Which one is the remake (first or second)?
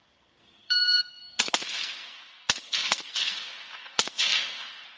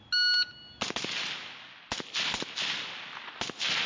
first